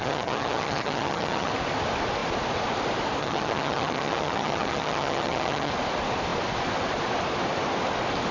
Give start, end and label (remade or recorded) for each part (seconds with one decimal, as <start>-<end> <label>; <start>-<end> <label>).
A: 0.0-1.5 remade; 1.5-3.2 recorded; 3.2-5.7 remade; 5.7-8.3 recorded